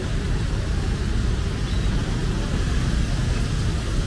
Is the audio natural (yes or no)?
yes